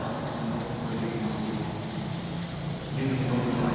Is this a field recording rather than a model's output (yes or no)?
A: yes